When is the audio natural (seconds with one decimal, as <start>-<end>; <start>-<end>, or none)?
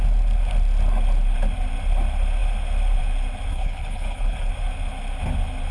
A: 0.0-3.5; 4.5-5.7